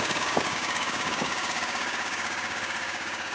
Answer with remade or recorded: remade